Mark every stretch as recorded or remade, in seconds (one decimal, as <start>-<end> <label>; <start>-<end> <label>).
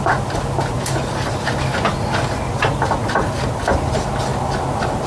0.0-5.1 recorded